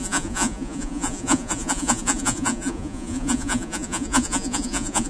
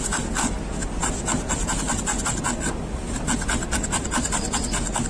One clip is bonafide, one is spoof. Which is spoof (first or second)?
first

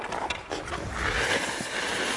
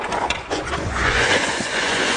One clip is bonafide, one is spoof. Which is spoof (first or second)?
second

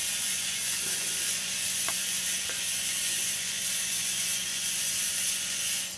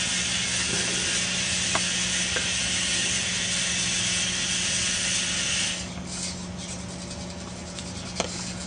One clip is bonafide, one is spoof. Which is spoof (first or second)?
first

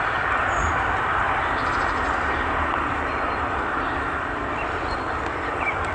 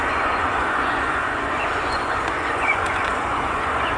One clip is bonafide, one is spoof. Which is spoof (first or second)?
second